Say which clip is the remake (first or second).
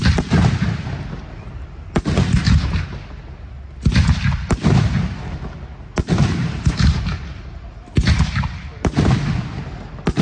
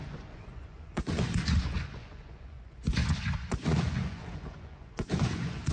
second